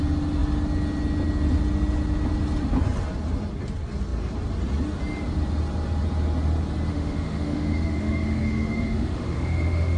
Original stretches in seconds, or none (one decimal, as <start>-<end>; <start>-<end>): 0.0-6.9